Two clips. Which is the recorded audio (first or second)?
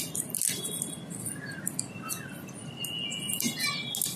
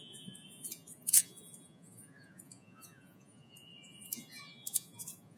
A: first